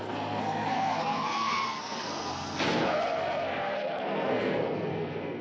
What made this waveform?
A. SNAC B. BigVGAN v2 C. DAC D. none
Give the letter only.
A